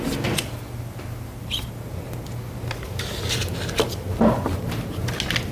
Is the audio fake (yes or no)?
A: no